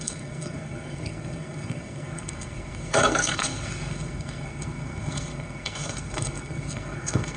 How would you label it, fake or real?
fake